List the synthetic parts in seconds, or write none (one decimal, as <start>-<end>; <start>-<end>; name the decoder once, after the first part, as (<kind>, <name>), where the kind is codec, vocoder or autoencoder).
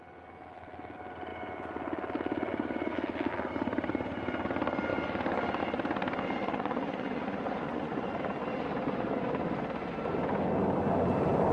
6.4-8.2 (vocoder, Vocos)